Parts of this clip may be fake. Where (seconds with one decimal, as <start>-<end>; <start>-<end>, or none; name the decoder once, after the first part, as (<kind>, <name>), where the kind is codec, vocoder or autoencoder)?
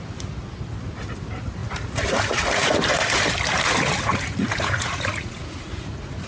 1.6-2.7 (vocoder, Vocos); 4.1-6.3